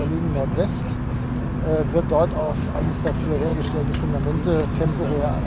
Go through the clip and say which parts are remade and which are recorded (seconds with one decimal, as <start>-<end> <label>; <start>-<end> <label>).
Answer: 0.0-2.4 recorded; 2.4-2.9 remade; 2.9-5.5 recorded